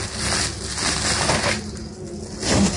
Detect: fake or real real